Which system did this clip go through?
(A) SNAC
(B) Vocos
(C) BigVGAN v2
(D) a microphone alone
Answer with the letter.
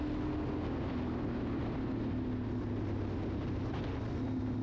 D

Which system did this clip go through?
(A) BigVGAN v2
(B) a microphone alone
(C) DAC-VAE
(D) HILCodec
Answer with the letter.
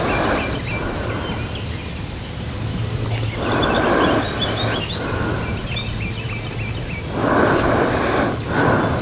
B